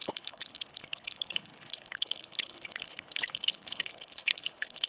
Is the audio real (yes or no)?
no